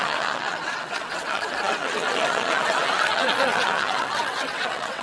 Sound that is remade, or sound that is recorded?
remade